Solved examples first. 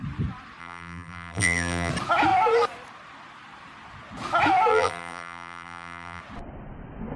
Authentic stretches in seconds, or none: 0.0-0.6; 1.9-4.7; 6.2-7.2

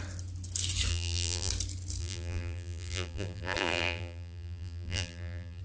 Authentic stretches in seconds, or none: 0.0-0.9; 1.5-2.0